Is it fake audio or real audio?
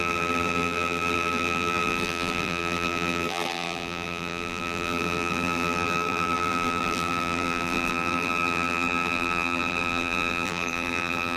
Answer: fake